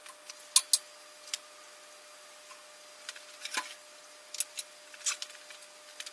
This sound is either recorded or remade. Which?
recorded